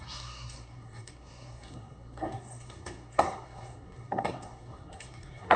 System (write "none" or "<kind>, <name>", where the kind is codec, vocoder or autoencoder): codec, SNAC